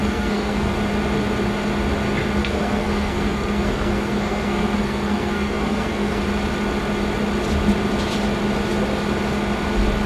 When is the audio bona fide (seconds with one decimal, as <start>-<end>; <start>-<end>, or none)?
0.7-2.4; 6.2-10.1